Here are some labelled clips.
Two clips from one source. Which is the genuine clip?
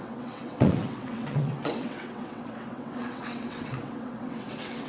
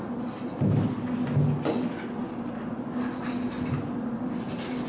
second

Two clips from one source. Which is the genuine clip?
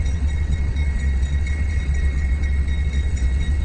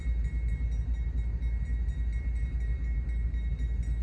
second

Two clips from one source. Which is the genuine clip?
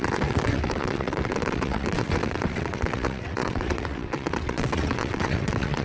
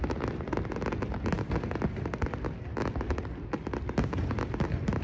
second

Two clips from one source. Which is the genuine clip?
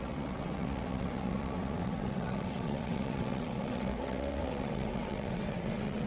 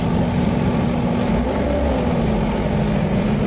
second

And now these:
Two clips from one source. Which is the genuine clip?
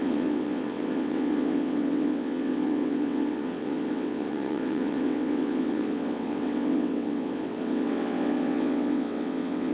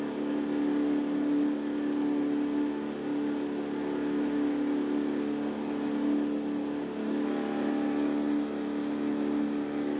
second